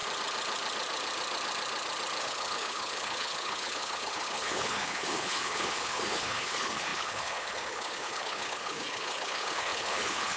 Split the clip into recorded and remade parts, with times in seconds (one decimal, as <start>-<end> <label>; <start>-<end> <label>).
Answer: 0.0-2.2 recorded; 2.2-10.4 remade